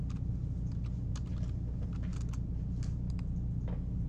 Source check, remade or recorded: recorded